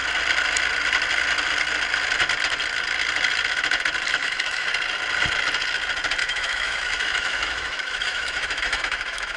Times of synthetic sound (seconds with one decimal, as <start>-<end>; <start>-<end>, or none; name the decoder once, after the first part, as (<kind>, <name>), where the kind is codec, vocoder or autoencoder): 4.2-4.7 (autoencoder, DAC-VAE); 6.2-9.4